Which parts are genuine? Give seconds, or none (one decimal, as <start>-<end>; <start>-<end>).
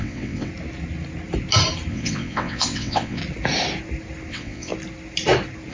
0.5-1.9; 3.2-4.3; 4.7-5.7